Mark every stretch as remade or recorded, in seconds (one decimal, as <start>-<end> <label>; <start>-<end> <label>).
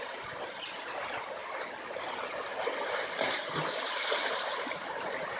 0.0-5.4 recorded